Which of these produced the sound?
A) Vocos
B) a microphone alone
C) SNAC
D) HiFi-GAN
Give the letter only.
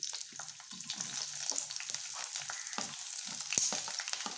B